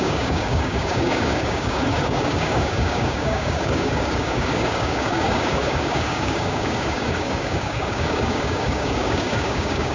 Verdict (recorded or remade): remade